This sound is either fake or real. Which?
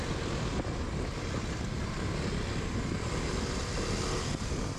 real